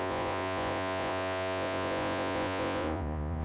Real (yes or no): no